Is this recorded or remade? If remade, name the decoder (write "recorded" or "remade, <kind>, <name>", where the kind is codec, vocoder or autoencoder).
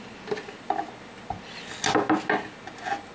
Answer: recorded